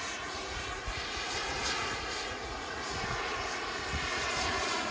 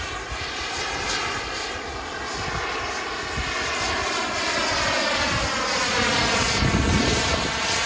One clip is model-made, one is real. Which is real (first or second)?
second